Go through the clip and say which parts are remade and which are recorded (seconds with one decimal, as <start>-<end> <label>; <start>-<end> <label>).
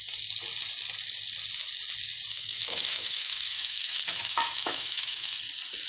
0.0-2.3 recorded; 2.3-5.4 remade; 5.4-5.9 recorded